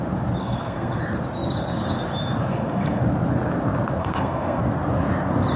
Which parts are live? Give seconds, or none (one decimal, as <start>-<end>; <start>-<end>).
0.0-0.4; 1.0-2.5; 3.0-4.0; 4.6-5.6